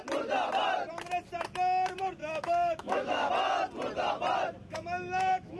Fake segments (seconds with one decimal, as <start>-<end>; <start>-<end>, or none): 2.2-3.3; 4.6-5.6